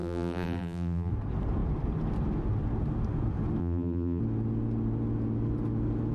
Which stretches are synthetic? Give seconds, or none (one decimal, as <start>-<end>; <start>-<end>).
0.0-1.1; 3.6-4.2